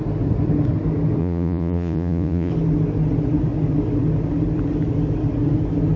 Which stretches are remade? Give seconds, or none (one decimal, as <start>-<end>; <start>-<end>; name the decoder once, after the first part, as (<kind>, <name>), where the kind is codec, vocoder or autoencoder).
1.2-2.5 (vocoder, Vocos)